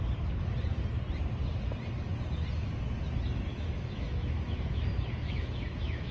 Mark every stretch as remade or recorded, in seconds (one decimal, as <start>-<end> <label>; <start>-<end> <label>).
0.0-3.5 recorded; 3.5-6.1 remade